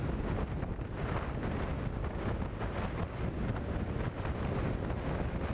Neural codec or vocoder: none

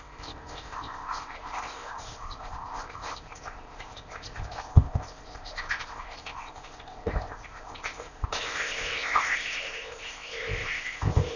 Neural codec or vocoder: codec, ZipCodec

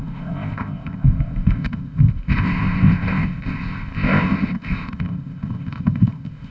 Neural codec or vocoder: codec, ZipCodec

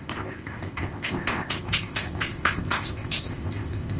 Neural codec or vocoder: codec, ZipCodec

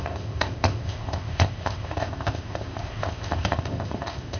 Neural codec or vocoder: codec, ZipCodec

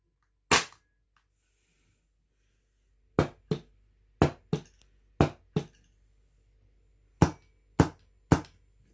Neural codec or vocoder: none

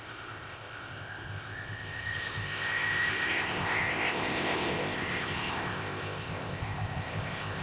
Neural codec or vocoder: codec, ZipCodec